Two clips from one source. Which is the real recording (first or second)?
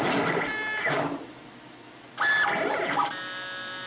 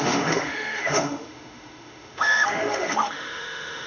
first